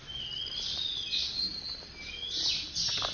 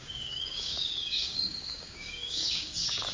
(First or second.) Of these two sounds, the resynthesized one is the second